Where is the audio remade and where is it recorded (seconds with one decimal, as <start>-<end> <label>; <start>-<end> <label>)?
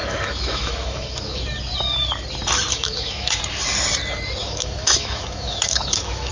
0.0-1.4 remade; 1.4-2.7 recorded; 2.7-3.4 remade; 3.4-4.4 recorded; 4.4-6.3 remade